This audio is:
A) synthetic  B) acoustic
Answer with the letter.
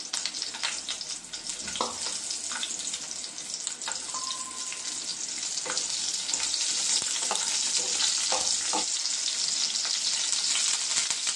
B